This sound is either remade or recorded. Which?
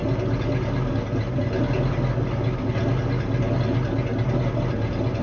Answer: recorded